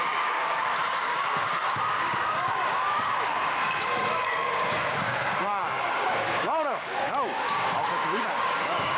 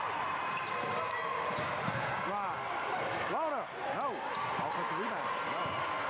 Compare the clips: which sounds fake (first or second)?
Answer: first